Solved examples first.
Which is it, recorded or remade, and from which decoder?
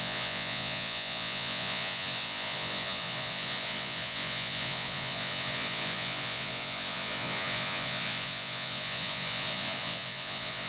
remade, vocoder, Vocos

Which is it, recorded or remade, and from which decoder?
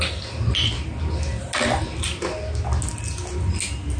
recorded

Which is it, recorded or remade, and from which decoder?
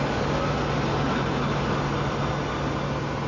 recorded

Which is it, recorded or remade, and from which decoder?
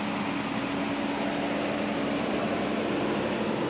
recorded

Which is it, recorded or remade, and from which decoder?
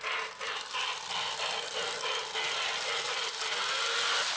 recorded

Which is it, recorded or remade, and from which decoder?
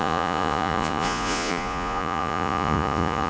remade, vocoder, Vocos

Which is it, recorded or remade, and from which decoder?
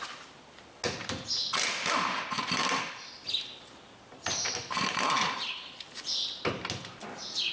recorded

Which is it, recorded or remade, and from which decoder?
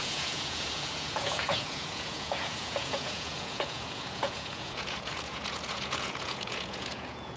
remade, vocoder, Vocos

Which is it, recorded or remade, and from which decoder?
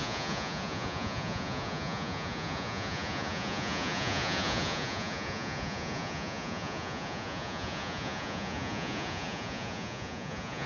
remade, vocoder, Vocos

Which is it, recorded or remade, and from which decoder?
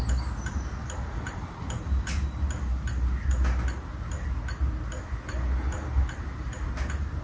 recorded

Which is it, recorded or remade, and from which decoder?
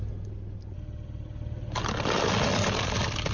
recorded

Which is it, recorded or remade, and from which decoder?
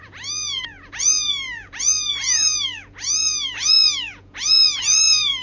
remade, vocoder, Vocos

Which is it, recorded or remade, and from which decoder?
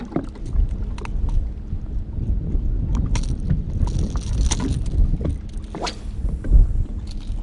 recorded